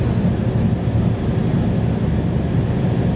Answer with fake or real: real